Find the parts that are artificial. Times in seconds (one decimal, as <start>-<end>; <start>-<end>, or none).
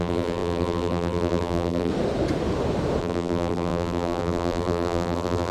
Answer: 0.0-1.9; 3.0-5.5